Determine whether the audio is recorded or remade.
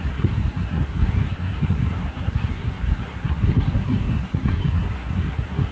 remade